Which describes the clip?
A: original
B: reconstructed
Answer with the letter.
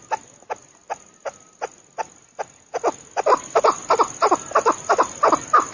A